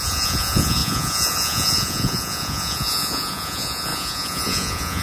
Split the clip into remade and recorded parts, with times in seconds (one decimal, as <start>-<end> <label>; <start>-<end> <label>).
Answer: 0.0-5.0 remade